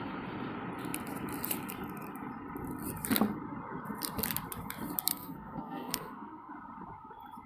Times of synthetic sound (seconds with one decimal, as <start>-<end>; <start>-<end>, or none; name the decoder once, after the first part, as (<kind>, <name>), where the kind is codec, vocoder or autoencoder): 5.1-6.5 (codec, SNAC)